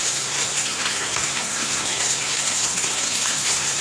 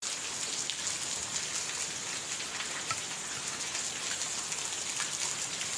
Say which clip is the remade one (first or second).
first